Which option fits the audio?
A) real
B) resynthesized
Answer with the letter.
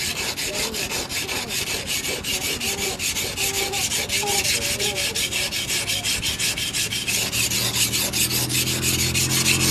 A